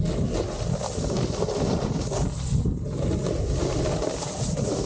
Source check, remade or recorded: recorded